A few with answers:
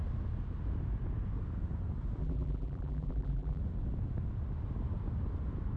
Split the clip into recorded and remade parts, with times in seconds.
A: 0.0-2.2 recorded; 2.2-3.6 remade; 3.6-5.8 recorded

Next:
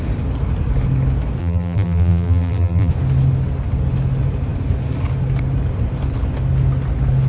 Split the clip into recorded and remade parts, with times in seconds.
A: 0.0-1.4 recorded; 1.4-2.9 remade; 2.9-7.3 recorded

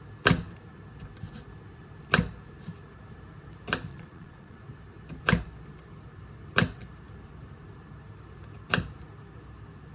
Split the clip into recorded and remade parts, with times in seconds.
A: 0.0-3.9 recorded; 3.9-4.6 remade; 4.6-9.9 recorded

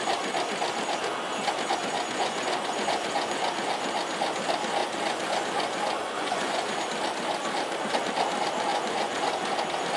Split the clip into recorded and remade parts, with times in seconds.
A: 0.0-1.8 recorded; 1.8-3.5 remade; 3.5-4.8 recorded; 4.8-6.8 remade; 6.8-8.7 recorded; 8.7-9.3 remade; 9.3-10.0 recorded

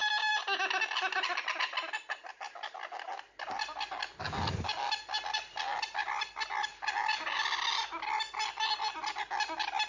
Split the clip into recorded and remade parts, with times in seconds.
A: 0.0-9.9 recorded

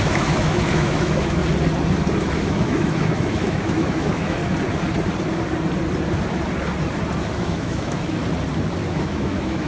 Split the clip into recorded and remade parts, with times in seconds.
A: 0.0-1.4 remade; 1.4-2.2 recorded; 2.2-4.4 remade; 4.4-7.4 recorded; 7.4-8.2 remade; 8.2-8.9 recorded; 8.9-9.7 remade

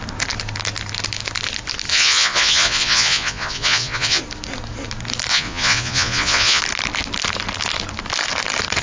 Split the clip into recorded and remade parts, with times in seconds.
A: 0.0-1.9 recorded; 1.9-4.2 remade; 4.2-5.3 recorded; 5.3-6.6 remade; 6.6-8.8 recorded

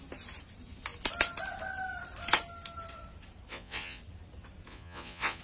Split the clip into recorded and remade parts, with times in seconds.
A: 0.0-3.5 recorded; 3.5-4.0 remade; 4.0-4.7 recorded; 4.7-5.4 remade